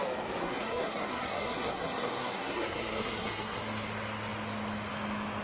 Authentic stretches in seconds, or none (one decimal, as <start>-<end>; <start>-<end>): 0.0-0.4; 3.6-5.4